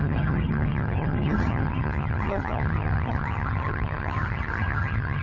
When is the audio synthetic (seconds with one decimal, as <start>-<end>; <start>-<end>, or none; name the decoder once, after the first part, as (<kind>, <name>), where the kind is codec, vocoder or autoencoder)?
0.0-5.2 (vocoder, HiFi-GAN)